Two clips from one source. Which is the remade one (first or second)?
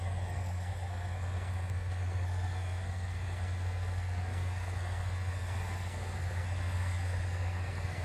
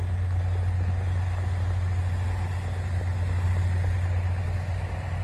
first